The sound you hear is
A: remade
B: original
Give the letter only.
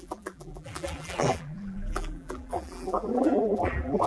A